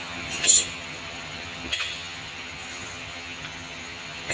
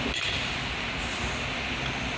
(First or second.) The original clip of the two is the second